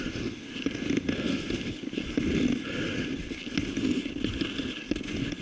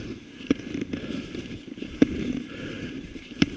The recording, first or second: first